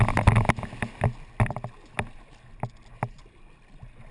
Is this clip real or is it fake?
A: real